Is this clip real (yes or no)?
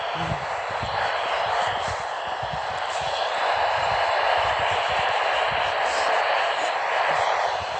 yes